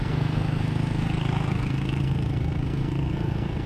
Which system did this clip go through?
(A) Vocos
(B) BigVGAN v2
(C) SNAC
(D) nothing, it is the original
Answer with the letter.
C